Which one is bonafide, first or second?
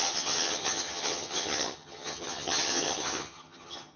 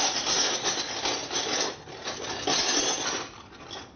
second